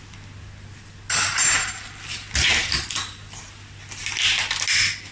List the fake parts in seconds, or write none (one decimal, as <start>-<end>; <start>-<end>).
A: none